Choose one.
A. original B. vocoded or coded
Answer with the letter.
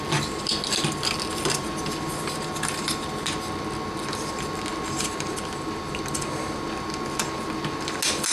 A